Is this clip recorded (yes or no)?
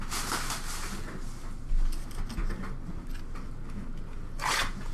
yes